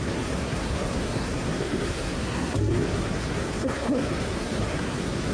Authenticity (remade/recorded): remade